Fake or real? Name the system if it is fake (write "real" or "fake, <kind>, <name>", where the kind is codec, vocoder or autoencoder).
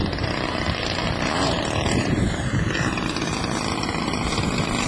fake, vocoder, BigVGAN v2